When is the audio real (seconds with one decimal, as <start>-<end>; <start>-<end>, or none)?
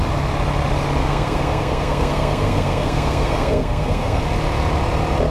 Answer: 0.0-1.0; 4.2-5.3